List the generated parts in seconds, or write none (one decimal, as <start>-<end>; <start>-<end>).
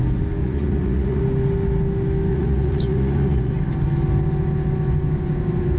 0.4-1.2; 2.3-3.5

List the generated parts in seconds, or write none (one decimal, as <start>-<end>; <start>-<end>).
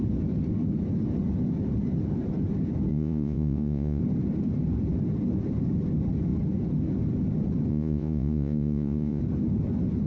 2.9-4.0; 7.7-9.2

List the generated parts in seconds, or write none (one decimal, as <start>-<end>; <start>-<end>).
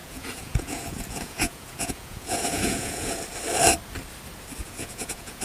0.0-3.2; 4.6-5.4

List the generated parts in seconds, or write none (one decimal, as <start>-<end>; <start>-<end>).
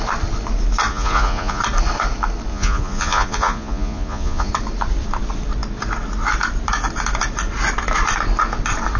0.9-1.6; 2.5-4.5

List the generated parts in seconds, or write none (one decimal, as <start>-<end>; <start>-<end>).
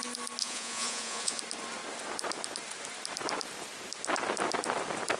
0.4-1.4